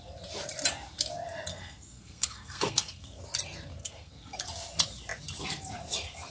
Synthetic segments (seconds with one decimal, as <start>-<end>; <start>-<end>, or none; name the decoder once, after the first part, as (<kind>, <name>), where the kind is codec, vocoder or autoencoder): 1.5-3.2 (codec, SNAC); 3.8-4.4